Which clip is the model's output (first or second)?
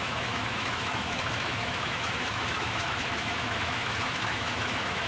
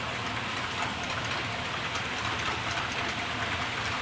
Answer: first